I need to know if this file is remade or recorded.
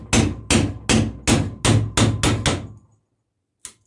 recorded